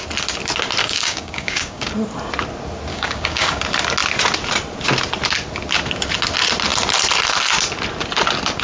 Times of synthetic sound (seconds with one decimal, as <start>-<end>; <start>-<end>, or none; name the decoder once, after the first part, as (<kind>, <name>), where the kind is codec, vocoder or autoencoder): 0.8-1.9 (codec, DAC); 2.9-3.6